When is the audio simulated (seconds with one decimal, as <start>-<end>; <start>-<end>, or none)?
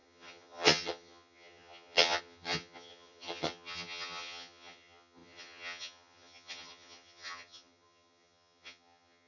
0.0-9.3